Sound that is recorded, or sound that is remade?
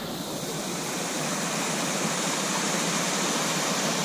remade